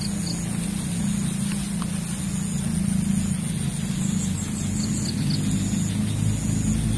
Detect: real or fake real